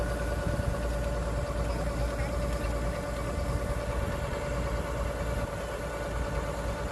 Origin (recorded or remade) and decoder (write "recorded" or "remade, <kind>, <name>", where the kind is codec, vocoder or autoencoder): recorded